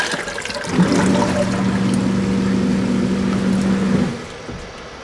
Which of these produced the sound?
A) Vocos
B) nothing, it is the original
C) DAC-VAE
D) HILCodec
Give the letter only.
B